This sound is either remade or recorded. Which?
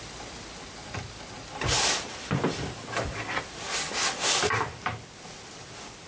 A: recorded